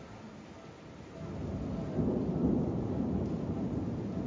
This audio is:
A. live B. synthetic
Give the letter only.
A